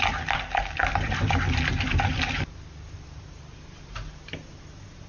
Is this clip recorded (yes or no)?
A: yes